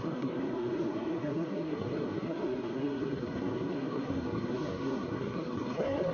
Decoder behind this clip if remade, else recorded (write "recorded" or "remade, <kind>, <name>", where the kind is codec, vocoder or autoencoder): remade, codec, SNAC